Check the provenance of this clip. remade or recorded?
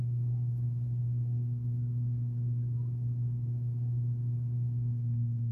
remade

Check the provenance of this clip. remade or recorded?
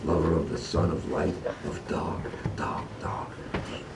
recorded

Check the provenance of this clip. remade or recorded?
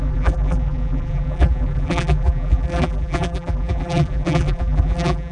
remade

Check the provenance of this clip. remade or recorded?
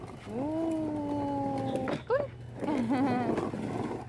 recorded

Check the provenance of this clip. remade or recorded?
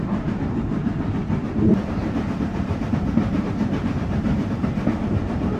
remade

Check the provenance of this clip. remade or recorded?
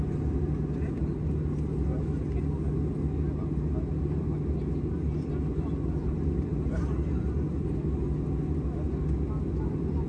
recorded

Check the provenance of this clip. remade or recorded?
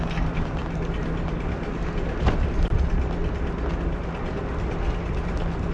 recorded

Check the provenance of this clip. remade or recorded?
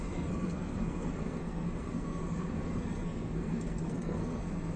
remade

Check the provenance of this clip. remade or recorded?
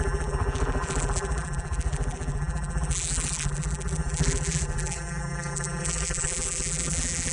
remade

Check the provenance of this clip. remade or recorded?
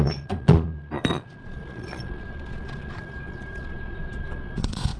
remade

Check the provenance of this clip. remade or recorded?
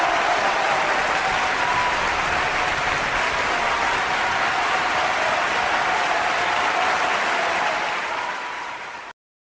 recorded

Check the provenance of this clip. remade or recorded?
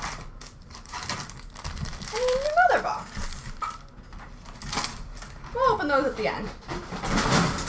recorded